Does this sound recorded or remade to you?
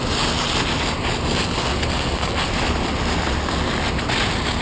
recorded